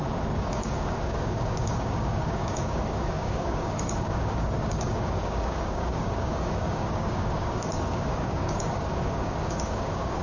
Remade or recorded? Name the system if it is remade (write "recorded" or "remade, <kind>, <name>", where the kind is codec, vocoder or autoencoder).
remade, codec, DAC